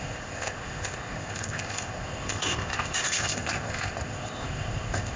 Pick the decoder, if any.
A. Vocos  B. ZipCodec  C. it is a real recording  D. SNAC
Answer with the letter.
B